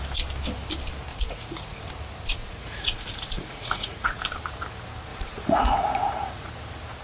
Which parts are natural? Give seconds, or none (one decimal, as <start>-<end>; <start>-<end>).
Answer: 0.0-1.1; 1.8-2.4; 4.2-5.1; 6.5-7.0